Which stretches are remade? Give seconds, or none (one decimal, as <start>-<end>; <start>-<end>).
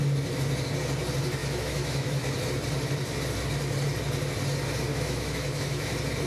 1.4-2.2; 4.9-5.8